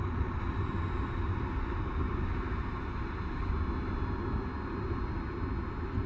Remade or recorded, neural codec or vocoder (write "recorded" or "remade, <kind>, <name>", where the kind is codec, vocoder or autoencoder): recorded